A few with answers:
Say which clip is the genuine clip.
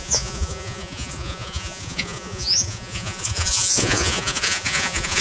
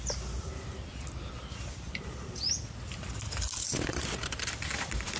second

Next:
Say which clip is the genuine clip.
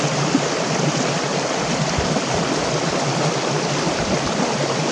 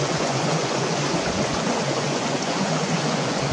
first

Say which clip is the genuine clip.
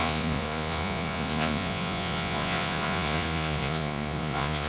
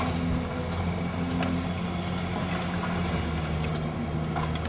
second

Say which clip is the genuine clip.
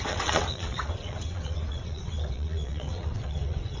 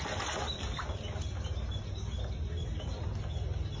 second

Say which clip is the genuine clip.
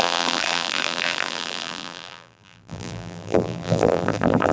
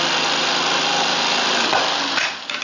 second